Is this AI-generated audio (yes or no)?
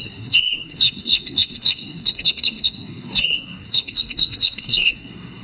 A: yes